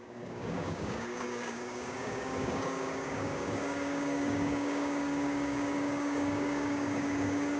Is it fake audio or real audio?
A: fake